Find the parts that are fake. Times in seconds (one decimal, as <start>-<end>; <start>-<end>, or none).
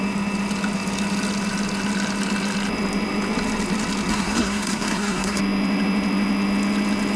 4.1-5.4